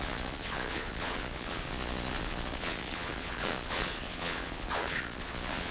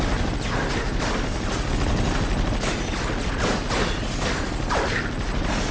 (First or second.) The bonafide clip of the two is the second